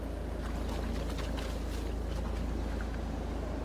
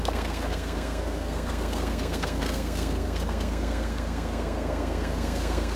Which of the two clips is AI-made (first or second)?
second